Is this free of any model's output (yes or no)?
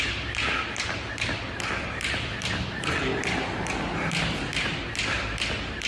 yes